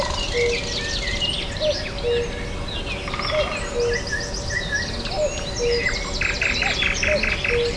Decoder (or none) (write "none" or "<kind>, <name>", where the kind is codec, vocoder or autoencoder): none